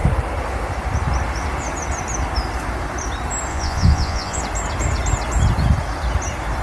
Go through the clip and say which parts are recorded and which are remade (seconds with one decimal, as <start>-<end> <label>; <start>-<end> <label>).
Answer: 0.0-3.5 recorded; 3.5-4.4 remade; 4.4-6.6 recorded